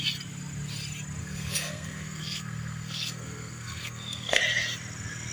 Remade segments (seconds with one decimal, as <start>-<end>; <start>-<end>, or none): 1.2-4.4